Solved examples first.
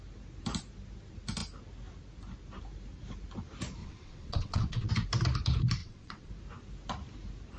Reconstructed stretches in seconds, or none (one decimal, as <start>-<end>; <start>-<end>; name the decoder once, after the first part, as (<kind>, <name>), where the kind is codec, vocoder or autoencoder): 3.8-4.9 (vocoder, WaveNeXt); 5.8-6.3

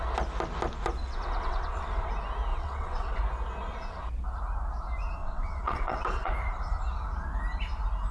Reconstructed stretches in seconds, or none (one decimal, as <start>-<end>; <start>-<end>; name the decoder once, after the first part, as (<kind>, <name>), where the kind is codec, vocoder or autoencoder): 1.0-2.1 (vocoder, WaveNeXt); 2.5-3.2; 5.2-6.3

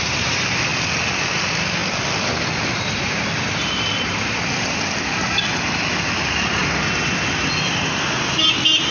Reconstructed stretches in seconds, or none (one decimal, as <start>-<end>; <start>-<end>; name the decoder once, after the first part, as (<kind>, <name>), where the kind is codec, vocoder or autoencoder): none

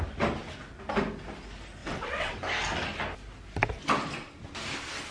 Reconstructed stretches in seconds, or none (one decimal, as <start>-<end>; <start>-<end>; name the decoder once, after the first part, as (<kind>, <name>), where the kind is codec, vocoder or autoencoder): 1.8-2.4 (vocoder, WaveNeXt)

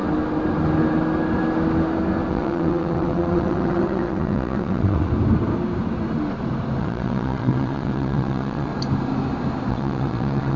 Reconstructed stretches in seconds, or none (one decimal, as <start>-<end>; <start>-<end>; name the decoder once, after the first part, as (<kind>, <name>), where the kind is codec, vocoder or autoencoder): 2.3-5.1 (vocoder, WaveNeXt); 6.8-8.7; 9.7-10.6

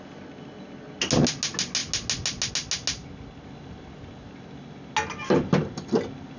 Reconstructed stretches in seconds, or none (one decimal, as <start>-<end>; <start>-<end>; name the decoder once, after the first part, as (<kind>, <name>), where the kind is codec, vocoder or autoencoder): none